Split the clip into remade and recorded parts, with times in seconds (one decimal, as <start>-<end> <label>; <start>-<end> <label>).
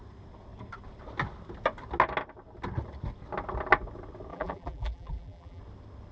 0.0-4.3 recorded; 4.3-5.6 remade; 5.6-6.1 recorded